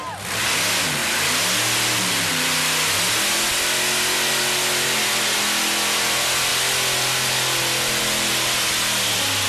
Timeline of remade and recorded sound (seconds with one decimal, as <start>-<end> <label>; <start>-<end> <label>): 0.0-9.5 recorded

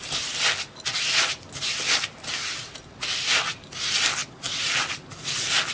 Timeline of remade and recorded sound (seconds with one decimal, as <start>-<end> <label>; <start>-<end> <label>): 0.0-5.7 recorded

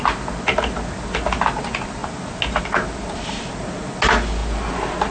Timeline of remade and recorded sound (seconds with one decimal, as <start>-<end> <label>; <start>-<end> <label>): 0.0-5.1 recorded